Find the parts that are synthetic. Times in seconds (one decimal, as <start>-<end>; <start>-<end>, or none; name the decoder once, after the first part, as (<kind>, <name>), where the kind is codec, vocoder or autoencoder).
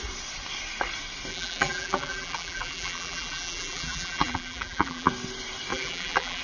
1.3-5.1 (vocoder, BigVGAN v2); 5.7-6.4